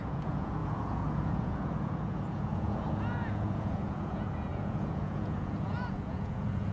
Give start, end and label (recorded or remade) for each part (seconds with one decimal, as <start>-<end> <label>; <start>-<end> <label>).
0.0-6.7 remade

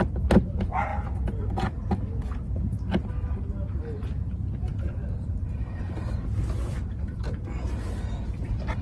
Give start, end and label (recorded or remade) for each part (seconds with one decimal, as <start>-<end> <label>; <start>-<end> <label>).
0.0-4.7 recorded; 4.7-7.9 remade; 7.9-8.8 recorded

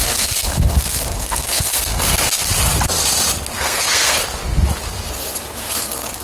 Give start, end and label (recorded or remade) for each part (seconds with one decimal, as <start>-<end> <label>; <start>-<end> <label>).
0.0-2.4 remade; 2.4-3.5 recorded; 3.5-4.2 remade; 4.2-5.1 recorded; 5.1-6.2 remade

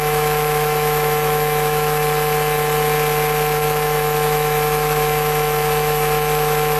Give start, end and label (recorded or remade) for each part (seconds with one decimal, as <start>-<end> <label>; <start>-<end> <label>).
0.0-2.0 remade; 2.0-3.6 recorded; 3.6-6.8 remade

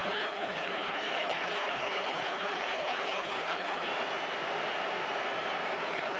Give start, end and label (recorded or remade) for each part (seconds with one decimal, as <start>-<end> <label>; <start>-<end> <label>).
0.0-3.9 remade; 3.9-5.8 recorded; 5.8-6.2 remade

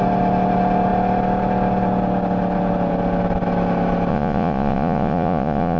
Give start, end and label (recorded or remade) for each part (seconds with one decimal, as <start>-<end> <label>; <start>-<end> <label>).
0.0-4.1 recorded; 4.1-5.8 remade